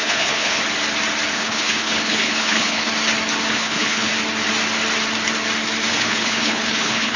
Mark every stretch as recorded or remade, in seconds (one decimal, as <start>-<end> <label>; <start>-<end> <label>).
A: 0.0-0.6 remade; 0.6-1.3 recorded; 1.3-2.9 remade; 2.9-3.5 recorded; 3.5-4.1 remade; 4.1-5.9 recorded; 5.9-7.2 remade